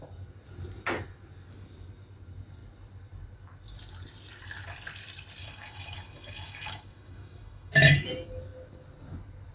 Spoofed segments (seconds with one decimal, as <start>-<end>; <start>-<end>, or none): 5.4-8.1